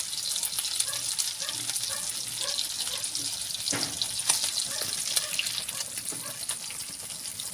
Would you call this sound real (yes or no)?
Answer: yes